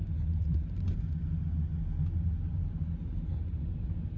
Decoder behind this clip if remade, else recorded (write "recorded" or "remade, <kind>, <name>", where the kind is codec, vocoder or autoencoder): recorded